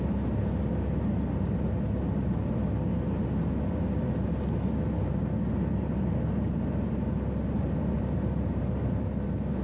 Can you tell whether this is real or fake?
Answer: real